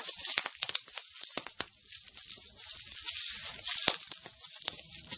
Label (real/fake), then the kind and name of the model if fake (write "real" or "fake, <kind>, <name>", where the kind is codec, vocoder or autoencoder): real